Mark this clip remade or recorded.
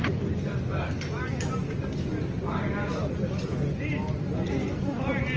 recorded